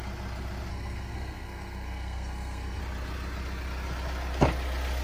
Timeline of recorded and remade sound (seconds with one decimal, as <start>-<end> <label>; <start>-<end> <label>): 0.0-0.7 recorded; 0.7-2.8 remade; 2.8-5.0 recorded